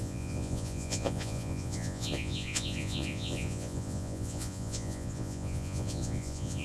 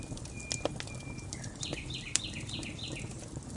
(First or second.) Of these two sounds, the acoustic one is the second